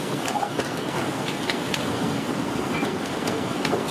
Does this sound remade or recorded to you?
remade